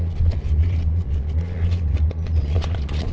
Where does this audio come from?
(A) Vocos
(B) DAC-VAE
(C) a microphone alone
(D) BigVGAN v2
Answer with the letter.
A